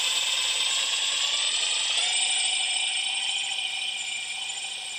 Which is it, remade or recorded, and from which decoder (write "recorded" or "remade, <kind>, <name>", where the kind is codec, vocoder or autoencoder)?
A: remade, vocoder, BigVGAN v2